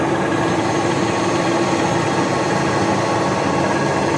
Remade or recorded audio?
recorded